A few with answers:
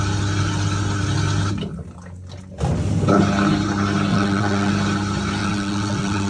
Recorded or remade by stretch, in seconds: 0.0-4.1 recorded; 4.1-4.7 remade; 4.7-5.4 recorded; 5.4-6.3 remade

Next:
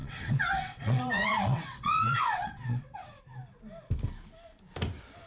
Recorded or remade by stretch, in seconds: 0.0-3.2 remade; 3.2-5.3 recorded

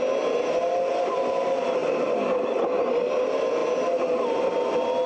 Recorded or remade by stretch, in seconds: 0.0-5.1 recorded

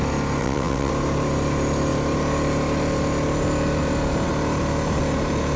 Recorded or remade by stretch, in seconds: 0.0-0.4 recorded; 0.4-0.9 remade; 0.9-5.6 recorded